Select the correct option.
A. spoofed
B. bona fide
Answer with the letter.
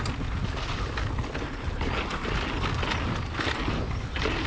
B